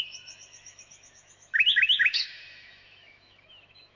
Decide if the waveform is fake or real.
fake